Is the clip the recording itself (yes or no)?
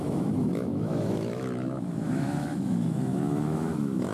no